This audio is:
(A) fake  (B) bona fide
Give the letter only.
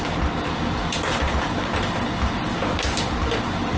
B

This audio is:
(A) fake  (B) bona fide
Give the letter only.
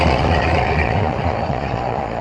A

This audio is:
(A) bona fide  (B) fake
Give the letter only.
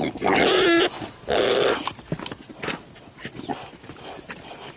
A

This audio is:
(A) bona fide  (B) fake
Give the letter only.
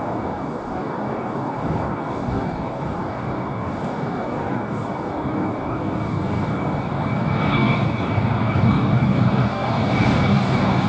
B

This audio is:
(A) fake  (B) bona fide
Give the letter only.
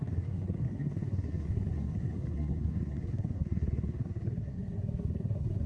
A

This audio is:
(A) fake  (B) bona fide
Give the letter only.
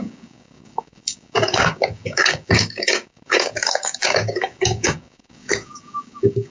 A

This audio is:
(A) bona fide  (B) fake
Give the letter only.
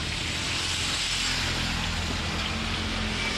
A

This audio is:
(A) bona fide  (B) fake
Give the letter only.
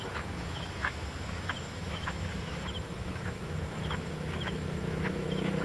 B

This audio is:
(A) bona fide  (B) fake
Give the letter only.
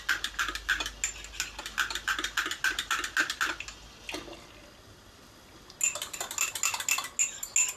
A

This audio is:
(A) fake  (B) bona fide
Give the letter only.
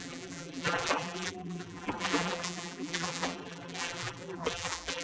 A